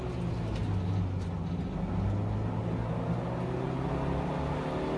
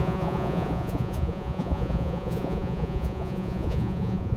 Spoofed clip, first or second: second